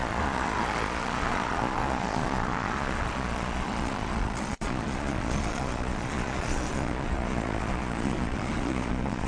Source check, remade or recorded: remade